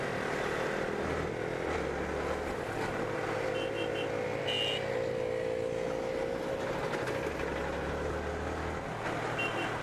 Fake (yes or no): no